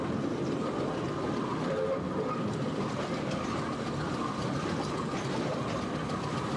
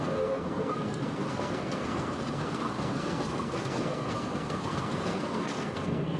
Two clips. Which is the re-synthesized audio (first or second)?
second